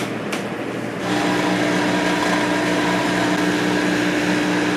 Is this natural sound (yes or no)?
yes